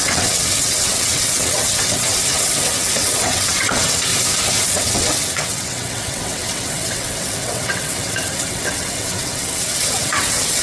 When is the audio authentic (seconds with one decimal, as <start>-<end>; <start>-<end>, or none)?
4.1-4.6

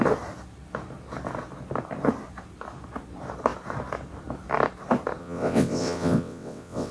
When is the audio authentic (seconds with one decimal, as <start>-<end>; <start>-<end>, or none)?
0.0-5.2

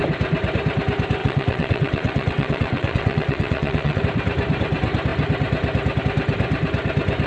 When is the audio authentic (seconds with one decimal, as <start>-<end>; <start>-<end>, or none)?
0.0-1.2; 4.0-7.3